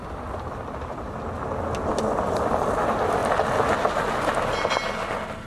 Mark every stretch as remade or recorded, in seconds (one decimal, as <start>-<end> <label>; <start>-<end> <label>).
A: 0.0-5.5 recorded